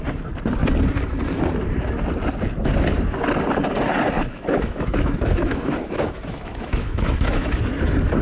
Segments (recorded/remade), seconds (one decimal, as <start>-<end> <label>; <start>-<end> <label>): 0.0-4.2 recorded; 4.2-7.6 remade; 7.6-8.2 recorded